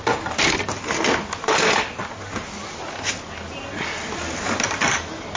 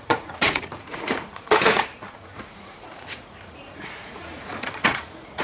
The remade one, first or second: second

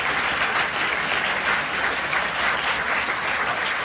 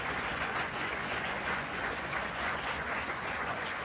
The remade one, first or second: second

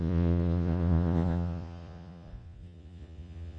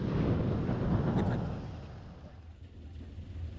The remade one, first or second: first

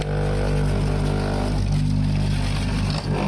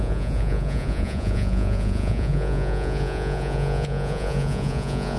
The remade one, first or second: second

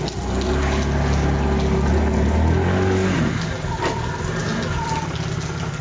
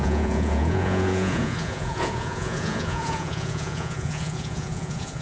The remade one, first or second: second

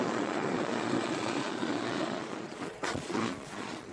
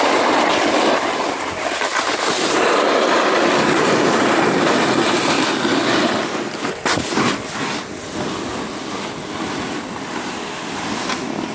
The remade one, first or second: first